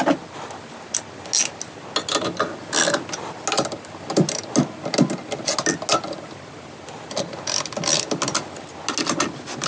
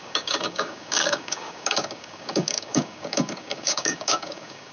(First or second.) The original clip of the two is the first